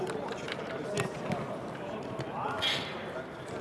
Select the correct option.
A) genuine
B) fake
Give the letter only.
A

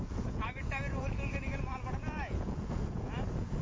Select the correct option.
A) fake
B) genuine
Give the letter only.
A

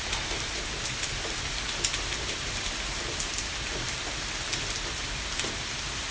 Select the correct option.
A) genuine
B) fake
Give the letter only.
A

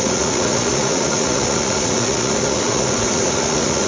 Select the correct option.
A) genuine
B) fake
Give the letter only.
B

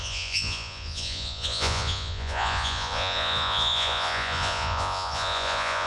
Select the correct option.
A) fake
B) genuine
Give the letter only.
A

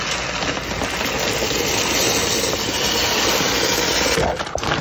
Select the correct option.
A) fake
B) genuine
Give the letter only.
B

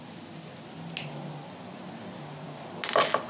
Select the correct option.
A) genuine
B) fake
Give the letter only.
A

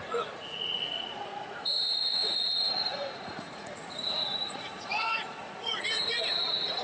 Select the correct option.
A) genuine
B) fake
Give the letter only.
B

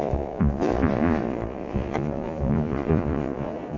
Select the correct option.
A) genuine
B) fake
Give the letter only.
B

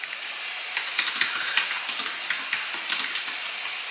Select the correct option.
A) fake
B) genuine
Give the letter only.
B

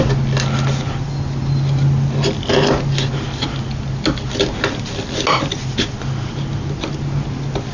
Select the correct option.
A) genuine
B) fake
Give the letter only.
A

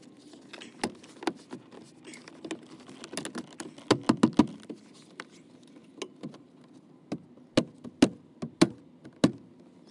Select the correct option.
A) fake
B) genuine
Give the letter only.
B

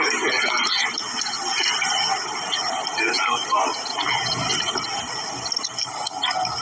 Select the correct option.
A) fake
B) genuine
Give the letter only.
B